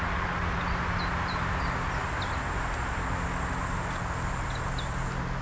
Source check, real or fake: real